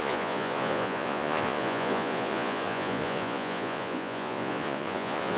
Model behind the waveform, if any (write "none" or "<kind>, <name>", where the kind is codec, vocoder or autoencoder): vocoder, Vocos